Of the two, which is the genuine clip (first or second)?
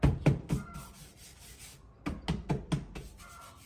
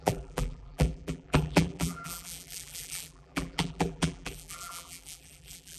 first